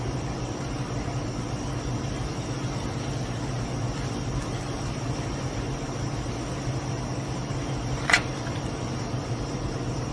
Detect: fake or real real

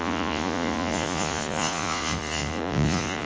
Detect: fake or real fake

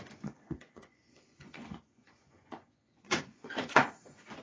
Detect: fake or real fake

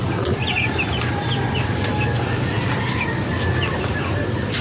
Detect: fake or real real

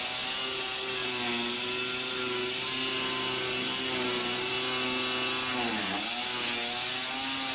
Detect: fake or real real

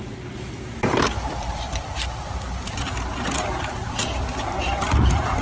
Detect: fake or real real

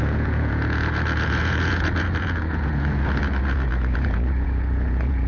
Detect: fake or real fake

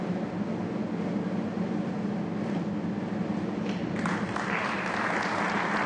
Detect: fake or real real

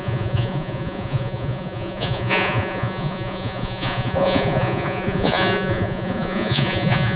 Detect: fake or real fake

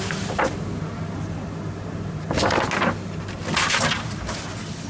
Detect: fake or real real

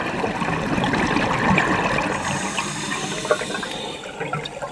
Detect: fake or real real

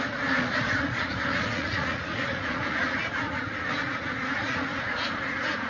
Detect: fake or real fake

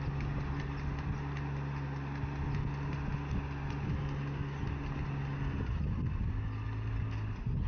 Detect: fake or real real